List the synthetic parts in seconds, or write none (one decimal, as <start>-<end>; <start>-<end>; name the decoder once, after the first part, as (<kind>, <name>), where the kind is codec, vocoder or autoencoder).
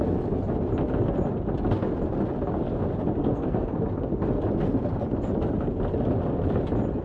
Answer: 3.2-3.7 (codec, SNAC)